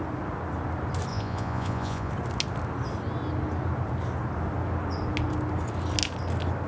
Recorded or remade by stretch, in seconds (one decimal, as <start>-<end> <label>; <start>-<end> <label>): 0.0-1.1 recorded; 1.1-2.1 remade; 2.1-6.7 recorded